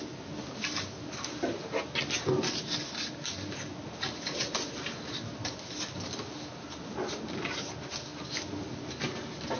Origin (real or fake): real